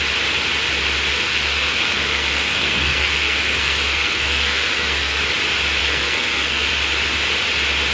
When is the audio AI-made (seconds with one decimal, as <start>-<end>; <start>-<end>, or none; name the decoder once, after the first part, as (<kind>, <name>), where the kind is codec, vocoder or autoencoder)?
1.1-5.2 (codec, SNAC); 5.8-6.7